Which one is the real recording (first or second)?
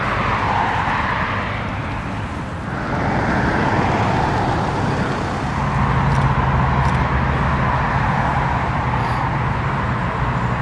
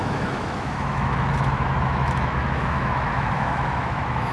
first